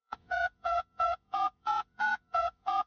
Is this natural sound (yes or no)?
no